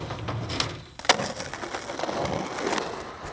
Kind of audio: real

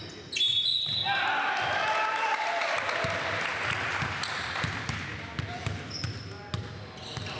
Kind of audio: real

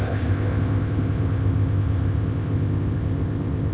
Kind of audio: fake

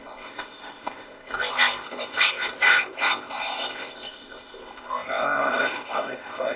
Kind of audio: fake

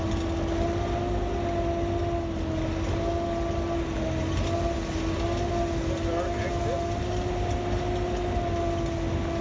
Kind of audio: real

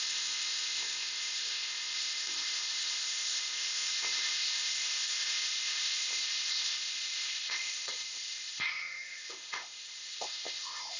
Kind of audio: fake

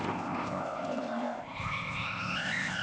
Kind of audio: fake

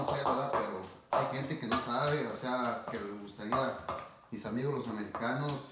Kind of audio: real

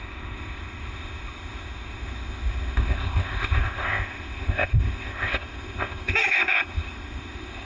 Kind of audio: fake